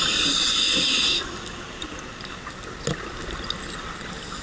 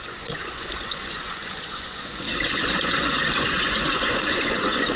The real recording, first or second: first